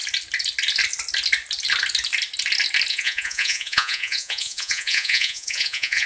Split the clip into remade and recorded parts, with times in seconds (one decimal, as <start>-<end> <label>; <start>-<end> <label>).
0.0-2.9 recorded; 2.9-6.1 remade